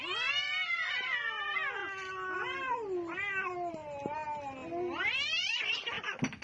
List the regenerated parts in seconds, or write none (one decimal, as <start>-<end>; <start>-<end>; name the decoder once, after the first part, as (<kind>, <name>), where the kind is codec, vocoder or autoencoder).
none